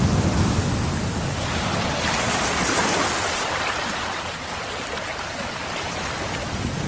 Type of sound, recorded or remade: recorded